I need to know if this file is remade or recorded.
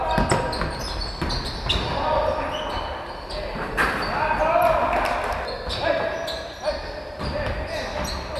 recorded